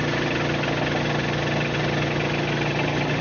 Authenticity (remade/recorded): recorded